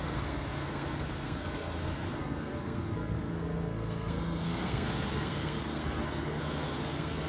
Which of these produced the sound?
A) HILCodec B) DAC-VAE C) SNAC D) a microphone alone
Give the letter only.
C